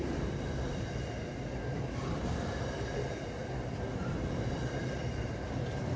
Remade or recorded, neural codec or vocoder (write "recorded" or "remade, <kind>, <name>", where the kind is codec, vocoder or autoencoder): recorded